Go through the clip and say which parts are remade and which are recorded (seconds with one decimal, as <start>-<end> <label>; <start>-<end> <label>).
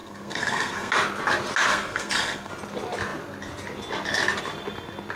0.0-0.9 remade; 0.9-1.7 recorded; 1.7-2.5 remade; 2.5-5.2 recorded